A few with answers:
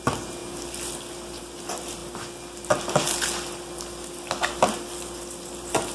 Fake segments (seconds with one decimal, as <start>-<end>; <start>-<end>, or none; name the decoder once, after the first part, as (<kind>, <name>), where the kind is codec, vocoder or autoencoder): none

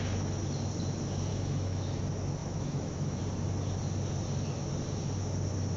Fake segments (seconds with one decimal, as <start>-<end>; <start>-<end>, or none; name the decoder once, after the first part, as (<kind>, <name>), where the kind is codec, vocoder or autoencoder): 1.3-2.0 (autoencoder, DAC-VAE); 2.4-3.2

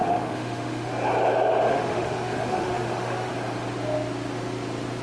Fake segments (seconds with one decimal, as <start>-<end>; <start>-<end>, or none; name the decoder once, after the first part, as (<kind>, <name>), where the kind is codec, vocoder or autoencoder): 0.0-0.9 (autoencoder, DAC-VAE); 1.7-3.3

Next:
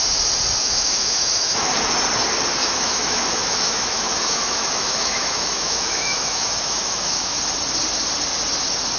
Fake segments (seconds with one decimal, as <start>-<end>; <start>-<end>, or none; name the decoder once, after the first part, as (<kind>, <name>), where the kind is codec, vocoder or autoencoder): 0.6-1.7 (autoencoder, DAC-VAE); 2.6-7.4

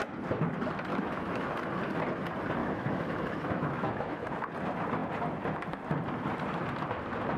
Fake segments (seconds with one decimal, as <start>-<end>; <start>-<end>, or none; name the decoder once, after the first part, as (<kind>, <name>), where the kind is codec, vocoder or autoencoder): 0.9-1.5 (autoencoder, DAC-VAE); 2.6-4.4

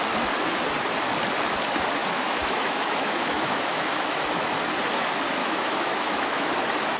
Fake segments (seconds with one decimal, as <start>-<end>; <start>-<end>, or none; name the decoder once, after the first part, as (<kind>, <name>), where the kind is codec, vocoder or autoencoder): 2.0-4.6 (autoencoder, DAC-VAE); 5.4-6.5

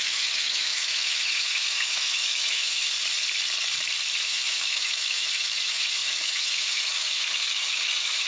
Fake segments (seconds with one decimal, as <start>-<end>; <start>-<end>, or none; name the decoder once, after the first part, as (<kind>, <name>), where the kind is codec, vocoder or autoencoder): 0.0-2.9 (autoencoder, DAC-VAE); 4.2-8.3

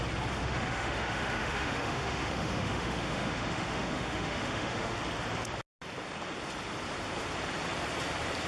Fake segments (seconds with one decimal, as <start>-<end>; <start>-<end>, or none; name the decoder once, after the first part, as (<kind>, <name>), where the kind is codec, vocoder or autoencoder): 0.4-5.0 (autoencoder, DAC-VAE)